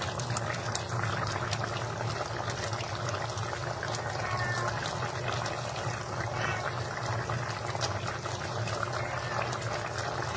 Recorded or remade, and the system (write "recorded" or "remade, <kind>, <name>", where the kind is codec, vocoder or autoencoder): recorded